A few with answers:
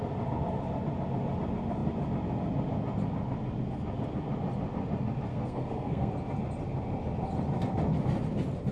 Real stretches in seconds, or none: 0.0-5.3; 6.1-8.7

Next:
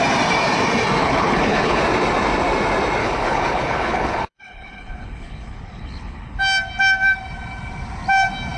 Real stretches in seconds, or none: 0.0-1.0; 1.8-3.0; 6.4-8.6

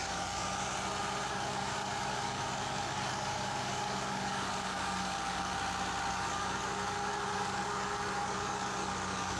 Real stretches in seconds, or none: 0.4-1.3; 5.5-6.1

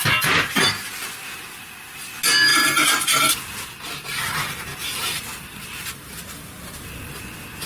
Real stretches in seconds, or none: 0.0-4.7; 7.2-7.7